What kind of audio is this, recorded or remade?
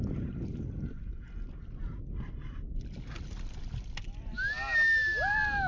recorded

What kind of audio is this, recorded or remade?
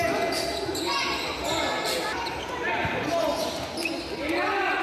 recorded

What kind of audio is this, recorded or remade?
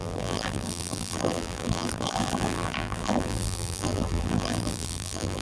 remade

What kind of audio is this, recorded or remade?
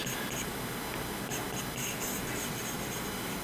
recorded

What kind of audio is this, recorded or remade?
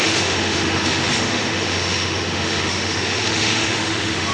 remade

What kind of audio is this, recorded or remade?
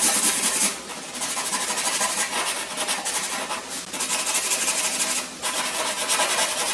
recorded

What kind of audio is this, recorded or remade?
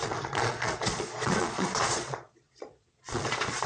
remade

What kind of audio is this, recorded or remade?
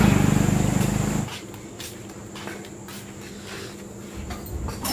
recorded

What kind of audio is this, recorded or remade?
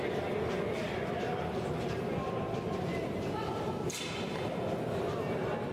recorded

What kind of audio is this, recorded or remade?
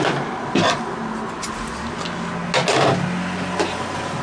recorded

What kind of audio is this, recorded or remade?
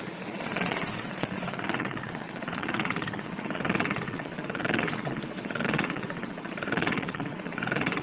remade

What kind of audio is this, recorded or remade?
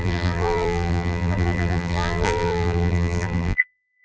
remade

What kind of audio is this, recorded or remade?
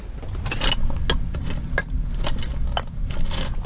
recorded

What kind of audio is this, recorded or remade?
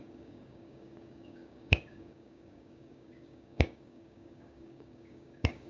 remade